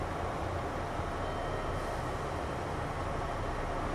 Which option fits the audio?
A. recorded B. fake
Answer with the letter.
A